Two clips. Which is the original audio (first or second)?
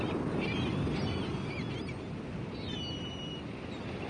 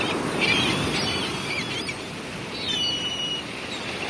first